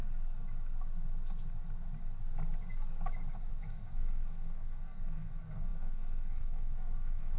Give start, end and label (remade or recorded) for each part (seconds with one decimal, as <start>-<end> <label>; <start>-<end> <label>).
0.0-3.5 recorded; 3.5-7.4 remade